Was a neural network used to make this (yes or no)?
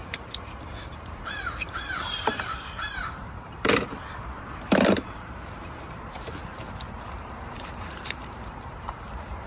yes